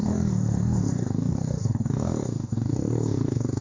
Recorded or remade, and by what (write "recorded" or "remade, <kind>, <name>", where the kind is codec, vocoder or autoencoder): remade, codec, DAC